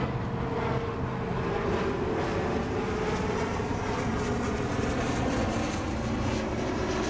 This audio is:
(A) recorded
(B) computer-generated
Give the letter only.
A